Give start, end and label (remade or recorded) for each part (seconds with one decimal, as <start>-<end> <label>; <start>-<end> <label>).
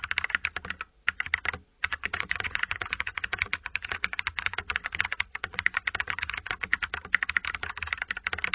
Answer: 0.0-1.7 recorded; 1.7-6.8 remade; 6.8-8.5 recorded